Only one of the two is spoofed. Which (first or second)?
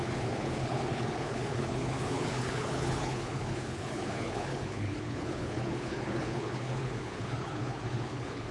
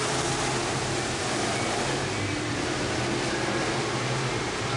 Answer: first